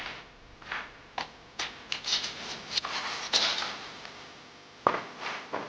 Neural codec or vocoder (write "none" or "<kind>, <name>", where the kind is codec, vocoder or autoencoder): none